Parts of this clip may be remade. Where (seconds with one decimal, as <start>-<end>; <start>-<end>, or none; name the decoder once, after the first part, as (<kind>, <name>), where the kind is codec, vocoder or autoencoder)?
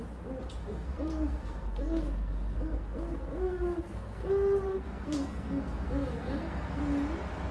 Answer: 0.6-4.3 (codec, SNAC); 4.7-6.8